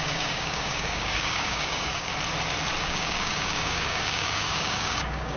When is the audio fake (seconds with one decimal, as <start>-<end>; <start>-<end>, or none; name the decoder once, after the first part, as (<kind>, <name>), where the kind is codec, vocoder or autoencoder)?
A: 0.0-2.1 (codec, DAC); 2.8-5.4